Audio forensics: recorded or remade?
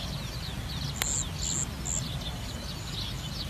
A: recorded